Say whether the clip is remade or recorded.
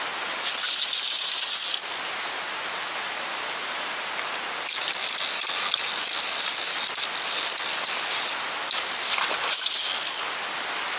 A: recorded